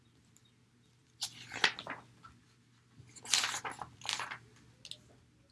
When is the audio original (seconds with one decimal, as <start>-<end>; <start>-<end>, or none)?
0.0-5.5